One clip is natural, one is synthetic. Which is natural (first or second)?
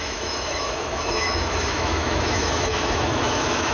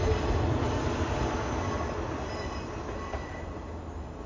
second